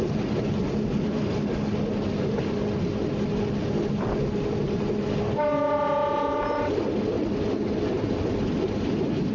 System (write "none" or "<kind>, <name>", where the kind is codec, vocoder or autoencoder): none